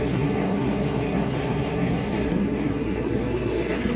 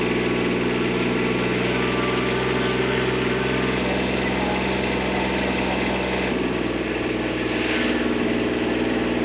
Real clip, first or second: second